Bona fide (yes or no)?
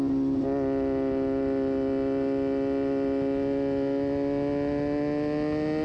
yes